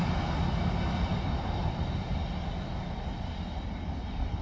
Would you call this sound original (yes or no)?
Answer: yes